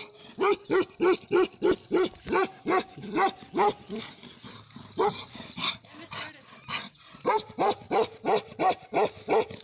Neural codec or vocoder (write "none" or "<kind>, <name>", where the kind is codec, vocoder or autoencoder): none